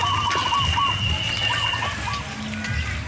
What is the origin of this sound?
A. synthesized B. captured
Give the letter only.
B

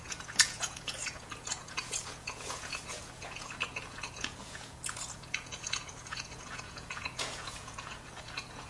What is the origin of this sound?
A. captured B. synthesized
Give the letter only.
B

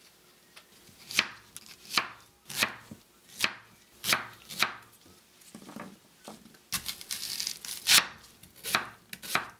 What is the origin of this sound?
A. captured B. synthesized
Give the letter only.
A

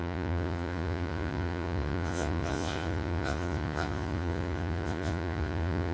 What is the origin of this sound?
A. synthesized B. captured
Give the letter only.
A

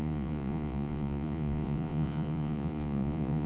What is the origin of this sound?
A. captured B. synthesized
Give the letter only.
B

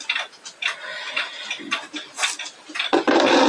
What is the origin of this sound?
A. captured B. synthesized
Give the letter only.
A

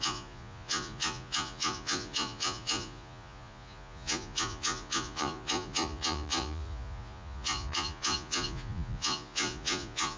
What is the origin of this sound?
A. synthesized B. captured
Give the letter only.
A